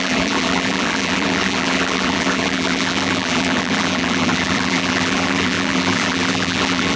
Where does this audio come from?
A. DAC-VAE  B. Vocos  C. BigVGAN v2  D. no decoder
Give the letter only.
C